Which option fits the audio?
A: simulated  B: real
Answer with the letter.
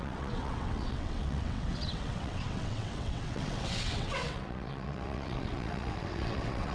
A